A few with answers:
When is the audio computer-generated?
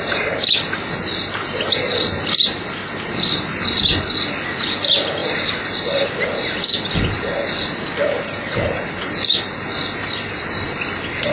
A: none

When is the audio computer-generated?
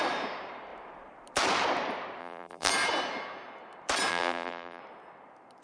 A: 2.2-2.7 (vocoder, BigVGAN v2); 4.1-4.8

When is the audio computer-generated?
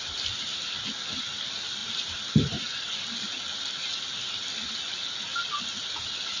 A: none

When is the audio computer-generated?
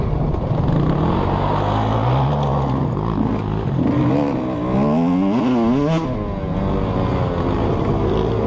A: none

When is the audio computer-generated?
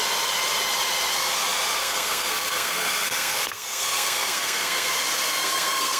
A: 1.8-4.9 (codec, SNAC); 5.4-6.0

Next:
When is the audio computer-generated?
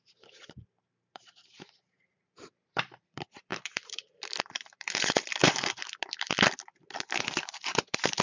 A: 0.0-5.4 (vocoder, BigVGAN v2); 7.0-8.2